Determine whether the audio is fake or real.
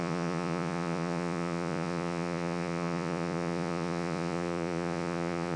fake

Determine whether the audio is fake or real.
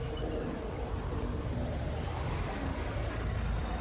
real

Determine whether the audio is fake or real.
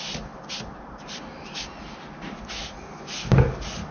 real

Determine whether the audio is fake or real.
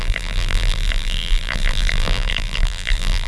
fake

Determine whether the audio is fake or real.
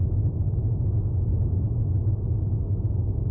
real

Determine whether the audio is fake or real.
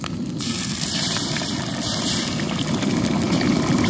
fake